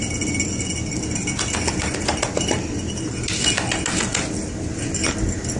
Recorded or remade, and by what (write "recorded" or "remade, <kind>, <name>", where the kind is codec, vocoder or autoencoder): recorded